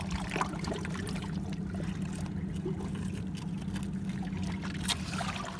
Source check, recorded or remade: recorded